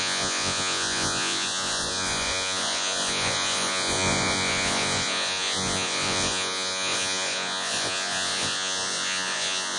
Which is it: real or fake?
fake